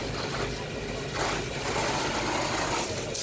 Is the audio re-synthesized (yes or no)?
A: no